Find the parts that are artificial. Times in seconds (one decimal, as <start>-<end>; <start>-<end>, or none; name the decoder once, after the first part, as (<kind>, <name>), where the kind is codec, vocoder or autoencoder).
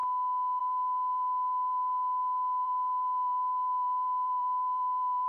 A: 0.6-5.3 (vocoder, BigVGAN v2)